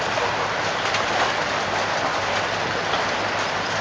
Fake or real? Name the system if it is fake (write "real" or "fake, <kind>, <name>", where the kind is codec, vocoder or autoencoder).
real